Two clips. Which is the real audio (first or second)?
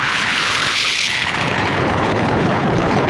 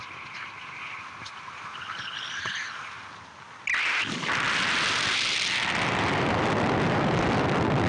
second